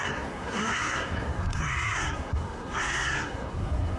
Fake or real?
fake